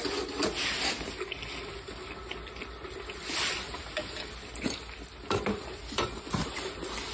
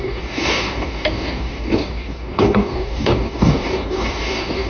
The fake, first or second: second